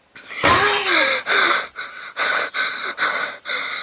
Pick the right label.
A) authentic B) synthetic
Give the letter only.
A